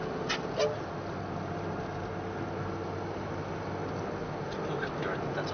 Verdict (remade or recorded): recorded